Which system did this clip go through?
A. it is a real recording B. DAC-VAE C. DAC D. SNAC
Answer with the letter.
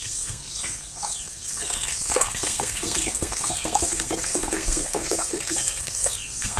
D